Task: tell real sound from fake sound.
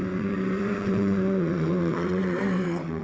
fake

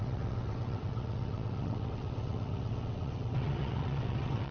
fake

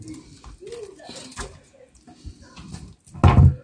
real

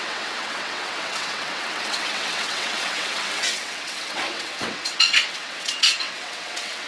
fake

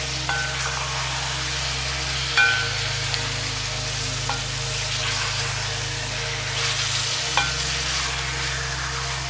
real